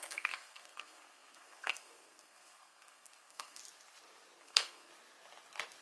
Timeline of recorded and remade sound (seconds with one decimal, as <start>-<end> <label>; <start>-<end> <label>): 0.0-3.6 remade; 3.6-4.4 recorded; 4.4-4.9 remade; 4.9-5.8 recorded